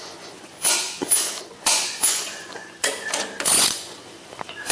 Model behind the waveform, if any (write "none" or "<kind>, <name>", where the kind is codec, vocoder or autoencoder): vocoder, Vocos